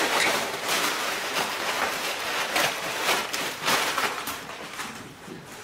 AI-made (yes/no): yes